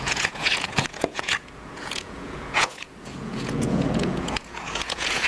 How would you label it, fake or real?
fake